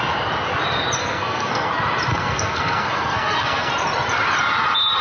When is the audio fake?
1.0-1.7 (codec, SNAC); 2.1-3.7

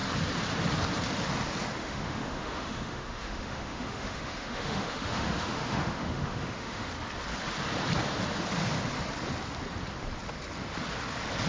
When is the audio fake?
1.8-6.9 (autoencoder, DAC-VAE)